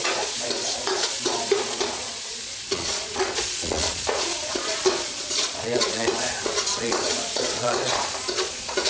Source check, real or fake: fake